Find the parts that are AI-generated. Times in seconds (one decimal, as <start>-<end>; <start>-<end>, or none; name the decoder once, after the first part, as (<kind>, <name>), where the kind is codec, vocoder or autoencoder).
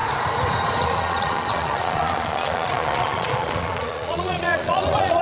0.8-5.2 (vocoder, Vocos)